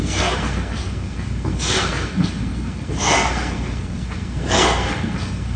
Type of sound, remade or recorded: remade